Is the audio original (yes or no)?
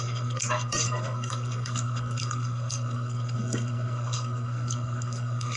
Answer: no